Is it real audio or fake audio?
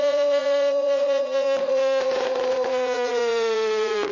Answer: fake